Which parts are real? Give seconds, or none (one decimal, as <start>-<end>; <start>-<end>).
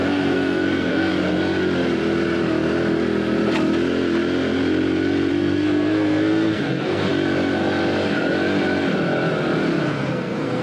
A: 1.1-5.3; 7.1-9.8